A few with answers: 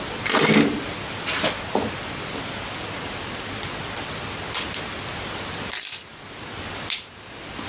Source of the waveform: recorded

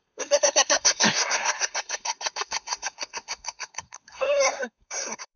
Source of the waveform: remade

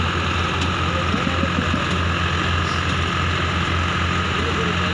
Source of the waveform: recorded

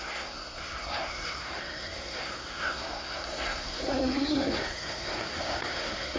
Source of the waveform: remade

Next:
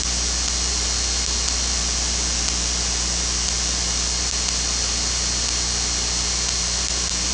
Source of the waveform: recorded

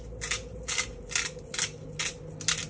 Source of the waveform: recorded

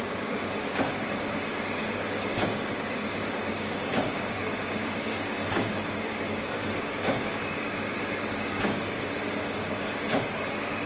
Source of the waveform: remade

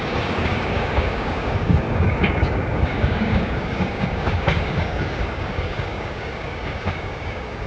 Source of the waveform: remade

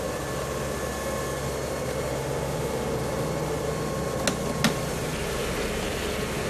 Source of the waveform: recorded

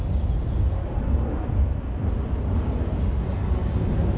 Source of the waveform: recorded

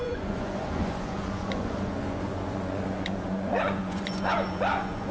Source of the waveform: remade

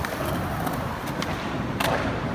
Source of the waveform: recorded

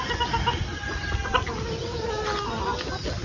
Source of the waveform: recorded